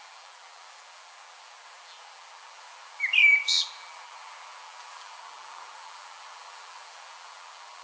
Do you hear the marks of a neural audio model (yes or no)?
yes